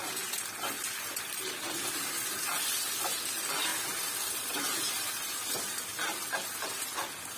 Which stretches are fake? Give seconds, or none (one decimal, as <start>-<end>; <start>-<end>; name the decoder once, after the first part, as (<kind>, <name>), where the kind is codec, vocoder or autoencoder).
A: none